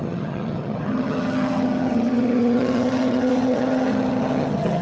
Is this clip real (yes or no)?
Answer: no